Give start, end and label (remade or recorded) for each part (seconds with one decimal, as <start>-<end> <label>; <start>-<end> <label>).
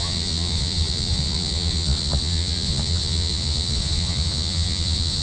0.0-5.2 remade